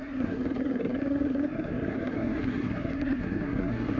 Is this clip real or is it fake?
fake